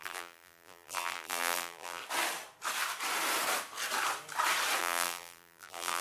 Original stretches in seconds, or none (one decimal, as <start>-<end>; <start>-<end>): 2.0-4.8